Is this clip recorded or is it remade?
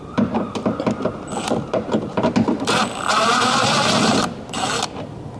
recorded